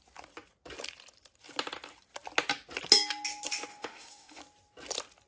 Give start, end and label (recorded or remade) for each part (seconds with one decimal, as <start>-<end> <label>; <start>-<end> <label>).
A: 0.0-3.7 recorded; 3.7-4.4 remade; 4.4-5.3 recorded